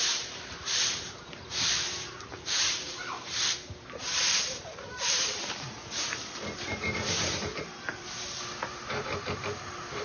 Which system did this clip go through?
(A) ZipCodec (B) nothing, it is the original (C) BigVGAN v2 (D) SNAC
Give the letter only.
C